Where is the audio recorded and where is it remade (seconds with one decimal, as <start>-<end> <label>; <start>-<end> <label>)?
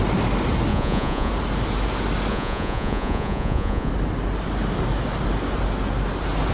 0.0-0.7 recorded; 0.7-1.3 remade; 1.3-2.3 recorded; 2.3-3.9 remade; 3.9-6.5 recorded